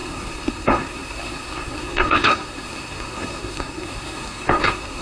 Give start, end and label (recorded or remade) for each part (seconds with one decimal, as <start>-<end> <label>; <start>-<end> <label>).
0.0-5.0 remade